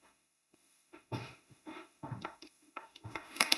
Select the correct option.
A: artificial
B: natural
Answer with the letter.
A